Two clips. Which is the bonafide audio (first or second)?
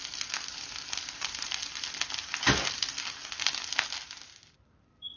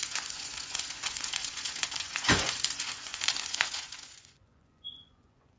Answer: first